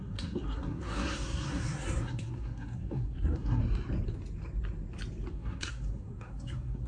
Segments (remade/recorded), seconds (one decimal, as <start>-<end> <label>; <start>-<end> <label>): 0.0-3.6 remade; 3.6-5.3 recorded; 5.3-6.9 remade